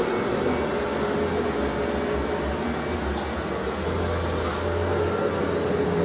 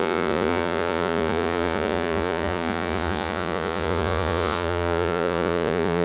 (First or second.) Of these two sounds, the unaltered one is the first